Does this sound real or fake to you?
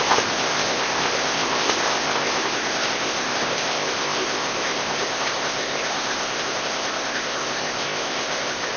fake